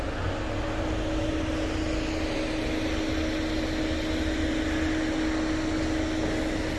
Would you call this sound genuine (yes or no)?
yes